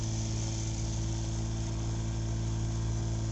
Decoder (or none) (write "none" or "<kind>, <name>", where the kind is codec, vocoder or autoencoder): none